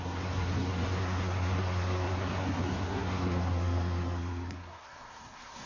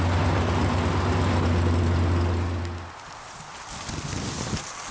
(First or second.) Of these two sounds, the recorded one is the second